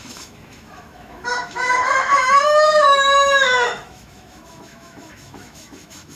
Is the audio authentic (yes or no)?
no